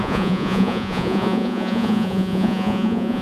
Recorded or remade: remade